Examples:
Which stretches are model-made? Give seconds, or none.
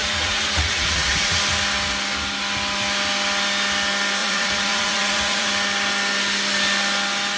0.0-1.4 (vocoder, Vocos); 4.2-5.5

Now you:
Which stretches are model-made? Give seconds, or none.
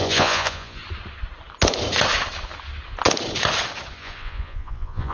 0.0-0.8 (vocoder, Vocos); 3.9-5.1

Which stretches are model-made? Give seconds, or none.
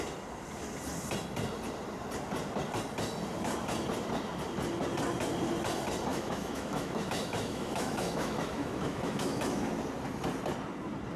6.1-9.7 (autoencoder, DAC-VAE)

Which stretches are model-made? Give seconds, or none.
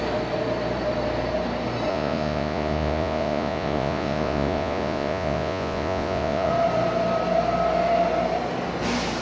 1.9-6.5 (vocoder, Vocos)